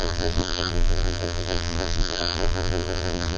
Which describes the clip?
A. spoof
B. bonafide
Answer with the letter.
A